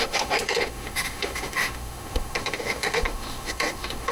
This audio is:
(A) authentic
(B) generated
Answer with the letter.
B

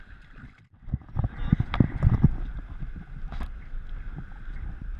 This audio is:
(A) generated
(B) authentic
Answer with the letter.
B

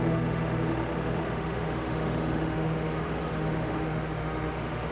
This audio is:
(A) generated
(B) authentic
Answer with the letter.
A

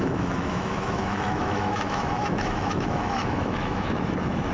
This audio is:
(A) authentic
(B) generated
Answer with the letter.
B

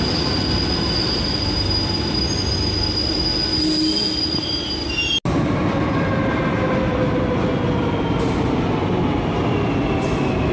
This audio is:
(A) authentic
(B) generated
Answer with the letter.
A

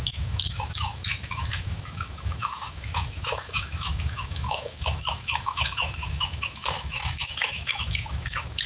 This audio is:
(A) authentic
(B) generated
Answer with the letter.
B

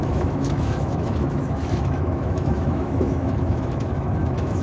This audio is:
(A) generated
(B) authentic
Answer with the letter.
A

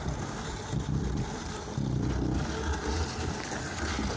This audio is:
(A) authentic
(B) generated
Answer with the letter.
A